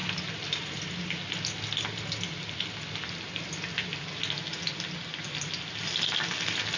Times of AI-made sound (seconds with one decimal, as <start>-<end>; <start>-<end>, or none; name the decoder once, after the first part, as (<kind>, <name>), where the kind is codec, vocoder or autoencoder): none